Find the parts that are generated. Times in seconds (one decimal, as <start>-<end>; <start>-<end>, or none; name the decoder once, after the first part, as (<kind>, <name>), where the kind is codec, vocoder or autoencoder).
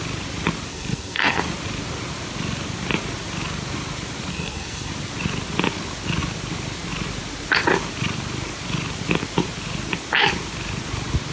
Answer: 0.7-1.4 (codec, SNAC); 4.3-4.9